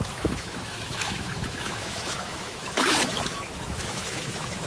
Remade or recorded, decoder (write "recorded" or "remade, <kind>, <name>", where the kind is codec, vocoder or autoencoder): remade, autoencoder, DAC-VAE